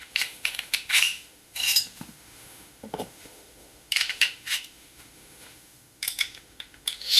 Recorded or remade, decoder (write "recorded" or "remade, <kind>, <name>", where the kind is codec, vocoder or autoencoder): remade, autoencoder, DAC-VAE